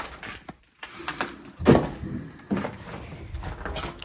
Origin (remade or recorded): recorded